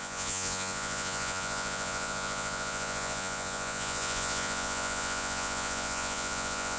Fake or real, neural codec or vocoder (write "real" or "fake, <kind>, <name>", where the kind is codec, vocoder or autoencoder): fake, vocoder, Vocos